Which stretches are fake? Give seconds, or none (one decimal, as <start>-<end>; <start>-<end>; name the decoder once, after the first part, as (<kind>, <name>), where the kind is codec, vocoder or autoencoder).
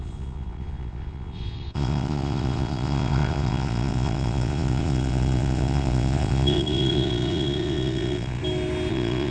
0.0-8.4 (vocoder, Vocos); 8.9-9.3